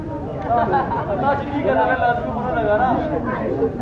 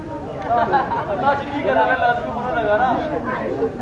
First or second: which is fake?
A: second